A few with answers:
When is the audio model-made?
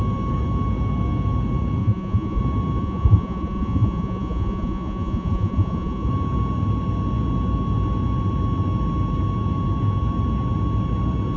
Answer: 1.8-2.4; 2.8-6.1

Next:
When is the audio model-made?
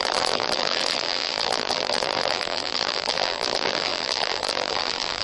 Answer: 0.0-5.2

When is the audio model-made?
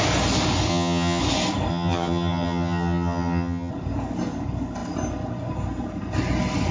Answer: 0.7-1.2; 1.7-3.7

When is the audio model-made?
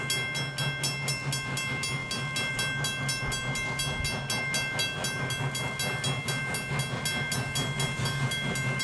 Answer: none